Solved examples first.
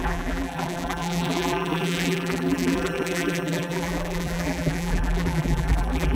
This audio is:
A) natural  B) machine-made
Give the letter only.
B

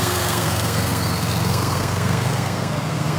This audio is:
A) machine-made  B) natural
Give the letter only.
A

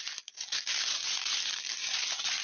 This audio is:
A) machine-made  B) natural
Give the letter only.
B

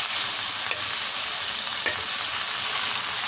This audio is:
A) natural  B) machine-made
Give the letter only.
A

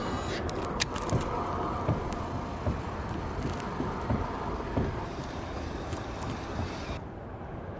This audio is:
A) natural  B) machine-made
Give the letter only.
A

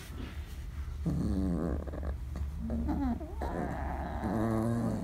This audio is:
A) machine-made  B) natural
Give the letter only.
B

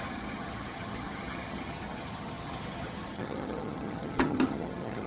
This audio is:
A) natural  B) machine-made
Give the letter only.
B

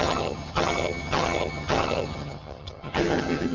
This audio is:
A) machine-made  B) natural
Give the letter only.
A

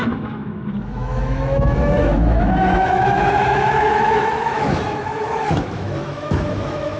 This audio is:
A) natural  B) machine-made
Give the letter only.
B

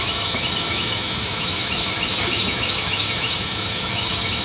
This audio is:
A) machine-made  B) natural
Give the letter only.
A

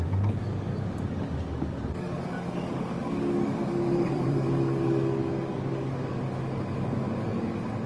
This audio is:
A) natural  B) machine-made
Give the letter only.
B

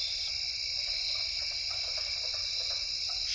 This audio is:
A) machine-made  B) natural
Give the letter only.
B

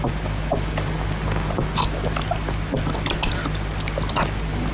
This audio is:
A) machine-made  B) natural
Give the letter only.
B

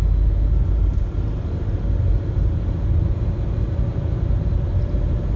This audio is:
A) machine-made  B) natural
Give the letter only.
B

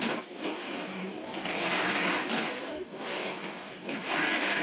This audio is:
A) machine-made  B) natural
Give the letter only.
A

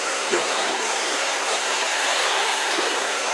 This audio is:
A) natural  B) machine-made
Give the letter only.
B